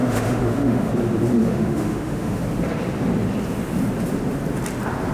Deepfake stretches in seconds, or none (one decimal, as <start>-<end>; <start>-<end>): 0.0-0.9; 1.4-2.4